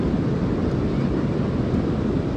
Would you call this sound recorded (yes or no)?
yes